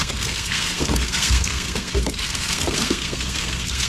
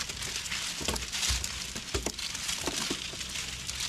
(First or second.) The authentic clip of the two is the second